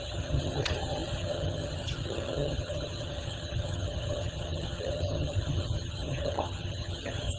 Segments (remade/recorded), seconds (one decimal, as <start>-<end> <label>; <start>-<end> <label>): 0.0-7.4 remade